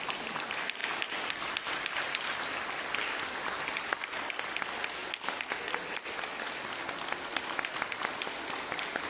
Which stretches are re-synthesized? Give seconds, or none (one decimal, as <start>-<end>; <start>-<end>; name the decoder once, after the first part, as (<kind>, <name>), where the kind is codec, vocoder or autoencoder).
none